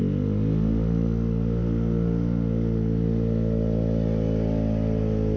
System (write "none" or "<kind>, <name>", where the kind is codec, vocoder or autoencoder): none